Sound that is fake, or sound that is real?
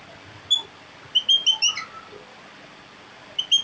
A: real